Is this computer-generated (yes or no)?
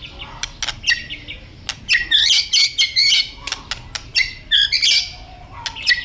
no